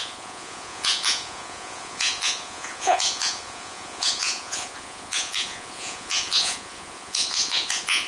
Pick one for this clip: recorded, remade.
remade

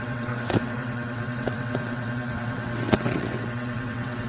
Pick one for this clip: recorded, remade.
remade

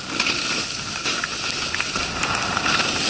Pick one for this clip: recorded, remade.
recorded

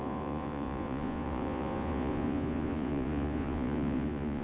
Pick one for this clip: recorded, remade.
remade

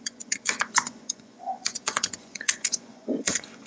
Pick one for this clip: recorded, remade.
remade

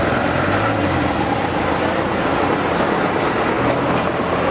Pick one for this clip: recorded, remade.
recorded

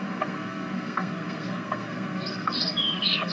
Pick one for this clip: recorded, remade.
remade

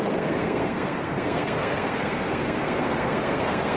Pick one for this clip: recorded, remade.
remade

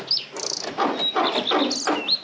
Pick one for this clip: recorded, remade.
recorded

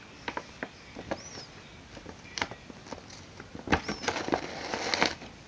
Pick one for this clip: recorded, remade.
recorded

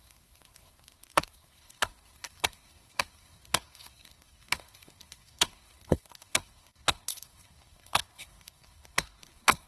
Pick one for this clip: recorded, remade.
remade